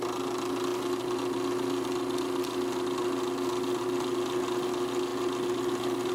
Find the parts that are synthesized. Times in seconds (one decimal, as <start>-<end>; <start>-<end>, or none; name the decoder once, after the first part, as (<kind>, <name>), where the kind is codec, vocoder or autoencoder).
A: none